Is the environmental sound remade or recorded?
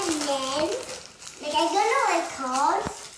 recorded